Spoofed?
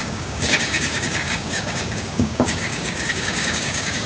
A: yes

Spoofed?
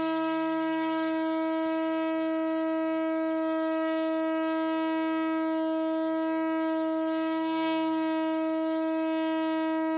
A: no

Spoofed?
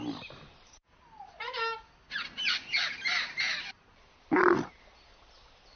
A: no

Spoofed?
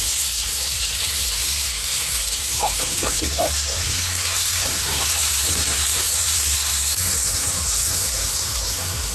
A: yes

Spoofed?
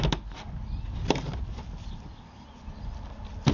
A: no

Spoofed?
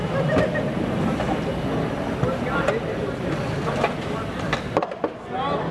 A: no